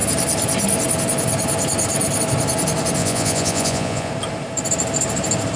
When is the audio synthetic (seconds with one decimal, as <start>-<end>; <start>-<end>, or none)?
3.0-4.1